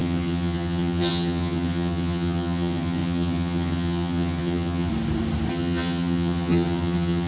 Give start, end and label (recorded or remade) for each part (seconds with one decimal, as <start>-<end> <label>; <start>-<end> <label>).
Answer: 0.0-4.9 remade; 4.9-5.5 recorded; 5.5-7.3 remade